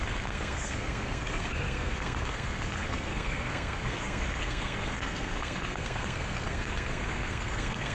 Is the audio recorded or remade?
remade